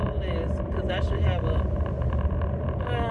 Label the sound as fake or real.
real